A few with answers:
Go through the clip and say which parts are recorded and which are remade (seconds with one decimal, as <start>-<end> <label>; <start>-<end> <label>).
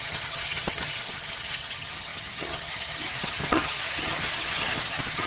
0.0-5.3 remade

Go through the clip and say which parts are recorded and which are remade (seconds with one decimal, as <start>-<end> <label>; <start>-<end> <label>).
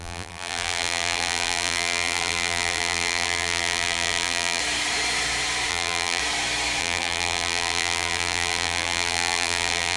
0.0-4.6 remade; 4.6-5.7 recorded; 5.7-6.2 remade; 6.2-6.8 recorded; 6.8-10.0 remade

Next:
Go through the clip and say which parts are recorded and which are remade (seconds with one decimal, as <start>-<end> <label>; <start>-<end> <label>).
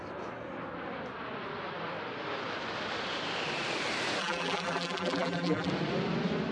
0.0-4.2 recorded; 4.2-5.7 remade; 5.7-6.5 recorded